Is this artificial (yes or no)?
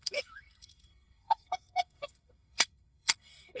yes